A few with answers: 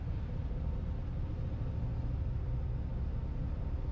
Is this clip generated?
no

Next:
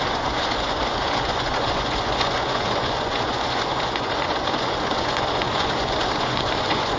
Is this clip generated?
yes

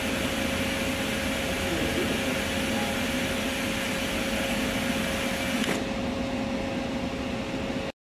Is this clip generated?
no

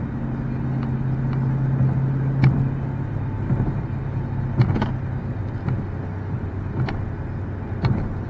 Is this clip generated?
no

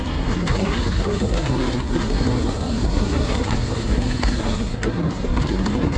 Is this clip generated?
yes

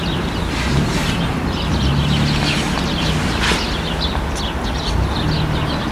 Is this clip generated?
no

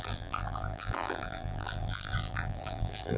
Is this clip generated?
yes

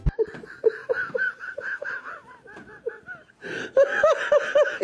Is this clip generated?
no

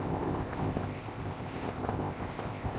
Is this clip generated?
yes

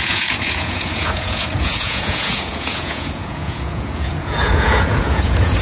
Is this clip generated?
yes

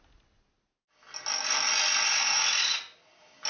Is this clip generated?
no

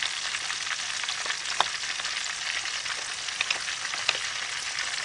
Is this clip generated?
no